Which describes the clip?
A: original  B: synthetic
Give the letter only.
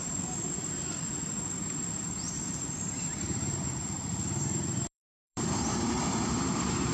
B